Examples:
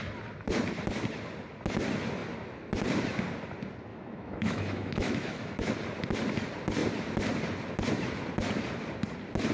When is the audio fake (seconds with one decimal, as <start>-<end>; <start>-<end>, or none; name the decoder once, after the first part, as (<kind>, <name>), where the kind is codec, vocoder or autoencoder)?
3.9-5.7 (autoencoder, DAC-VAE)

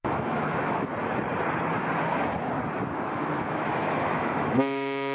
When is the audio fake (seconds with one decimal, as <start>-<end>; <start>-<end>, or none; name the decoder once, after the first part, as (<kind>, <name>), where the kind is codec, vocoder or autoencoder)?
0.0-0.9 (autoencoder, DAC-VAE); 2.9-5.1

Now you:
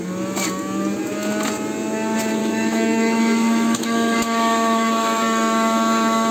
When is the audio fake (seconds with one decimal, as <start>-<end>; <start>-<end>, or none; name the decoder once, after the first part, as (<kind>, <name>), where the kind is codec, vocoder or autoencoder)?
2.4-6.3 (autoencoder, DAC-VAE)

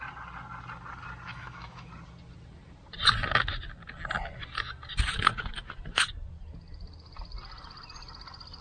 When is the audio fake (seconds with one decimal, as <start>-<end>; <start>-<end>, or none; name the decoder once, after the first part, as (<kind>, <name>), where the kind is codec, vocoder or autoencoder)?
1.3-1.9 (autoencoder, DAC-VAE)